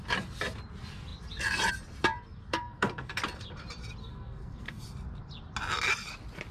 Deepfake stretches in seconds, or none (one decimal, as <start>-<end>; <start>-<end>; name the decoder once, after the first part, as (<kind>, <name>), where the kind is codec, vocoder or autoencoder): 2.5-3.2 (codec, SNAC); 4.0-4.8